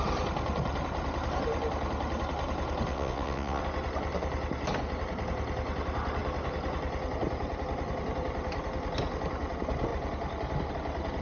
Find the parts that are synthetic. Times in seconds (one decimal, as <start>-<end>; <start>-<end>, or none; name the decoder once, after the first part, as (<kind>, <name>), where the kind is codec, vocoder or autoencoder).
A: 2.9-3.6 (vocoder, WaveNeXt)